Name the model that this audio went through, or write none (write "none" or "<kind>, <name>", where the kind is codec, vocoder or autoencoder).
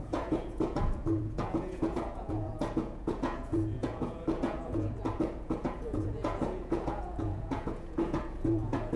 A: vocoder, Vocos